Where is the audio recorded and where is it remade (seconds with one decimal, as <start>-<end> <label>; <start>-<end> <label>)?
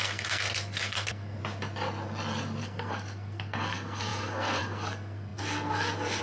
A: 0.0-1.4 remade; 1.4-2.6 recorded; 2.6-6.2 remade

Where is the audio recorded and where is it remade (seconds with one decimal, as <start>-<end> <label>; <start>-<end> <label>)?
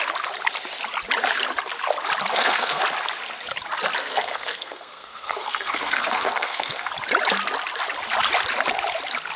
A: 0.0-2.3 recorded; 2.3-2.8 remade; 2.8-4.0 recorded; 4.0-6.9 remade; 6.9-9.4 recorded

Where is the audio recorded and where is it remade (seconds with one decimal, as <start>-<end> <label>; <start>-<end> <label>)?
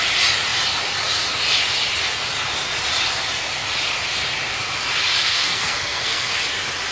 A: 0.0-5.2 recorded; 5.2-6.4 remade; 6.4-6.9 recorded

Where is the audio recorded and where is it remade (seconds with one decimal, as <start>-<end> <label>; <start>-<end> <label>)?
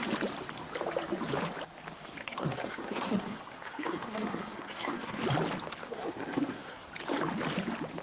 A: 0.0-2.2 recorded; 2.2-5.2 remade; 5.2-5.8 recorded; 5.8-6.9 remade; 6.9-8.0 recorded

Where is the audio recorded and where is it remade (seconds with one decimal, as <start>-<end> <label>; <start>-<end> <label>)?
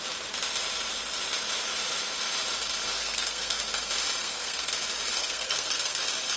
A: 0.0-2.9 recorded; 2.9-3.6 remade; 3.6-4.2 recorded; 4.2-4.7 remade; 4.7-5.2 recorded; 5.2-6.0 remade; 6.0-6.4 recorded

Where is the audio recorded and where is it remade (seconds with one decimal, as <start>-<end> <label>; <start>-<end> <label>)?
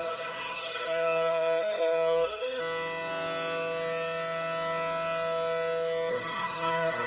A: 0.0-2.6 remade; 2.6-6.1 recorded; 6.1-7.1 remade